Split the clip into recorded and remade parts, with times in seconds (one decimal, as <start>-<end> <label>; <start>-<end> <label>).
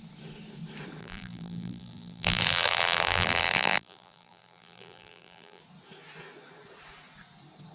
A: 0.0-1.0 recorded; 1.0-5.6 remade; 5.6-7.7 recorded